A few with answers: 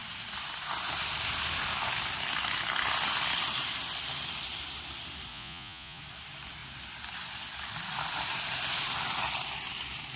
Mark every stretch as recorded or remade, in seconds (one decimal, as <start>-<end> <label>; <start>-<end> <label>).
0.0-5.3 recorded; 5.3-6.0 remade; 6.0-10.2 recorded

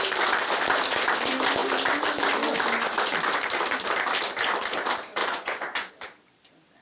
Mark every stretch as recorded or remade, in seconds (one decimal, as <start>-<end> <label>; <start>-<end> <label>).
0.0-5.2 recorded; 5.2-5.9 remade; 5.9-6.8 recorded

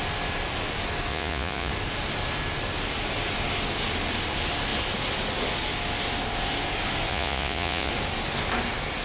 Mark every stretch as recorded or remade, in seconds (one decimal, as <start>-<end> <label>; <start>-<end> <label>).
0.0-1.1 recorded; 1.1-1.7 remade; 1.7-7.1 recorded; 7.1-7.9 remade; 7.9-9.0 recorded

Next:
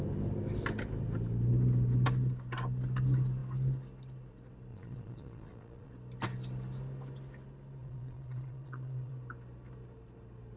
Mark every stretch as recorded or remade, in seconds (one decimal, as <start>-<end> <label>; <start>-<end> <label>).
0.0-4.7 recorded; 4.7-5.9 remade; 5.9-7.8 recorded; 7.8-9.1 remade; 9.1-10.6 recorded